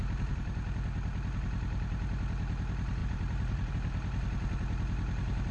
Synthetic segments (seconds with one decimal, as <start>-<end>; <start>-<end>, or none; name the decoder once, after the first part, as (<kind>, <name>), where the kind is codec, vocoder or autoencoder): 3.0-3.7 (vocoder, BigVGAN v2)